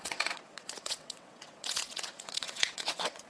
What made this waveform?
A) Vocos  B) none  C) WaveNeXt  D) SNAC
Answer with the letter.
C